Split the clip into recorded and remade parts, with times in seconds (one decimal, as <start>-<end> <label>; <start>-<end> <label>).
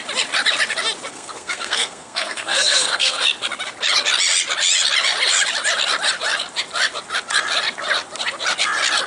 0.0-1.1 recorded; 1.1-3.2 remade; 3.2-9.1 recorded